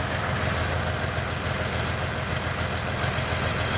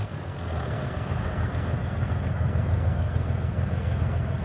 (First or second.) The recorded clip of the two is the first